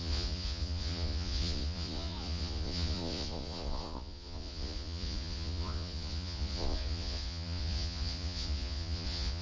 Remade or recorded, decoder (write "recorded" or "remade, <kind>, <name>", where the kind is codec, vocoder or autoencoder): remade, vocoder, Vocos